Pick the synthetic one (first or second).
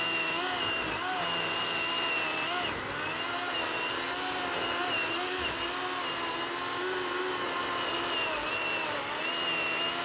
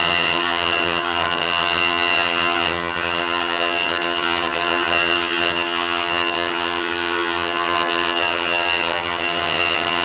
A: second